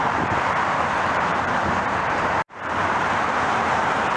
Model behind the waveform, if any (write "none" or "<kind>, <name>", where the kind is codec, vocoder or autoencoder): vocoder, BigVGAN v2